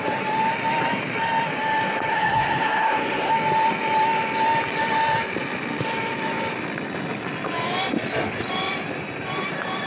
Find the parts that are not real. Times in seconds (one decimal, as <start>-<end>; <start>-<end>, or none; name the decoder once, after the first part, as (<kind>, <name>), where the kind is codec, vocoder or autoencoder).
2.1-3.3 (codec, SNAC)